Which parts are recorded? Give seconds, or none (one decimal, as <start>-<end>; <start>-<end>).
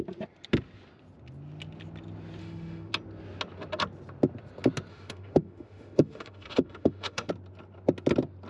0.0-2.4; 2.9-4.9; 7.3-8.5